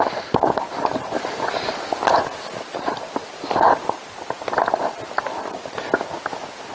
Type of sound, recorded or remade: recorded